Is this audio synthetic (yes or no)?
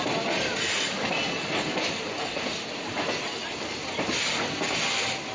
no